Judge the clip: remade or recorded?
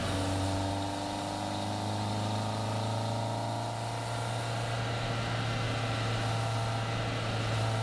recorded